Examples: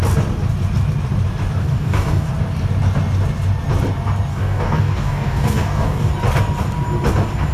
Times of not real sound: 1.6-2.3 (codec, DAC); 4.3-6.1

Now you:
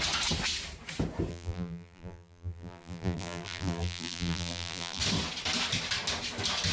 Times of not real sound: 1.3-5.0 (vocoder, BigVGAN v2)

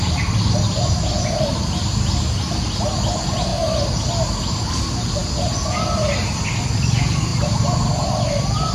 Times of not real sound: none

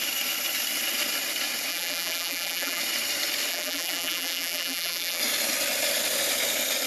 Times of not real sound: 1.7-2.8 (vocoder, BigVGAN v2); 3.5-5.2

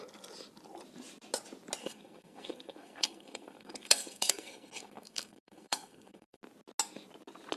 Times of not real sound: 1.8-6.4 (codec, SNAC)

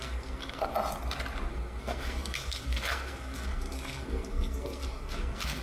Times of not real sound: 0.0-0.7 (codec, SNAC); 1.5-5.6

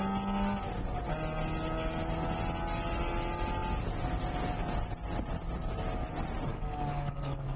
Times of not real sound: 6.5-7.6 (codec, DAC)

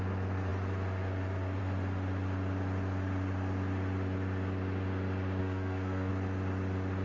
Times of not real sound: 5.4-6.1 (codec, SNAC)